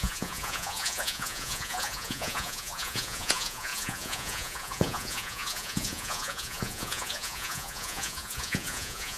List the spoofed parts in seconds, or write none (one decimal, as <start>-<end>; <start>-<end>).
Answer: 0.0-9.2